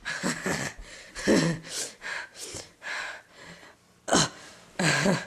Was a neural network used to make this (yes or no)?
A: no